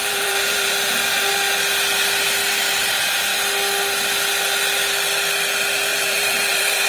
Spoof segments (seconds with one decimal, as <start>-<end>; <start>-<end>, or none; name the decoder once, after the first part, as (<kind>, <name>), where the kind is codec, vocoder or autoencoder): 0.0-0.7 (vocoder, BigVGAN v2); 5.9-6.9